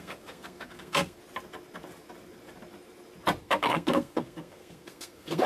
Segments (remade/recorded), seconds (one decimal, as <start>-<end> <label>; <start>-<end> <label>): 0.0-1.2 remade; 1.2-3.4 recorded; 3.4-5.5 remade